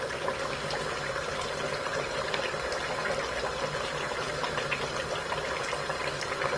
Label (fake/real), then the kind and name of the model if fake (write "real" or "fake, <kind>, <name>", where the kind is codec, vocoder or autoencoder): real